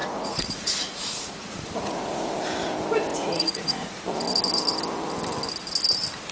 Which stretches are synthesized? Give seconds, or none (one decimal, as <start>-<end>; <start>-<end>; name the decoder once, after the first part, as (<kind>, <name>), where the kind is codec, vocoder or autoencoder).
0.0-2.3 (vocoder, Vocos); 3.1-3.9